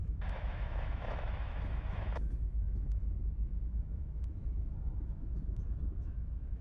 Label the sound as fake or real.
fake